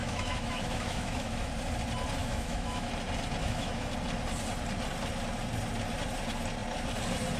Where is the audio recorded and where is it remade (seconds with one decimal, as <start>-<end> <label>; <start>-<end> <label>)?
0.0-1.5 remade; 1.5-2.2 recorded; 2.2-2.9 remade; 2.9-3.4 recorded; 3.4-3.9 remade; 3.9-7.4 recorded